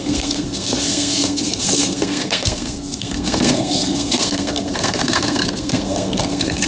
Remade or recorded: remade